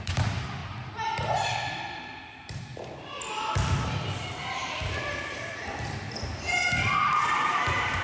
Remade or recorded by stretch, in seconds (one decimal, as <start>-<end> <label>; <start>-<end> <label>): 0.0-0.6 remade; 0.6-2.3 recorded; 2.3-2.7 remade; 2.7-7.3 recorded; 7.3-8.0 remade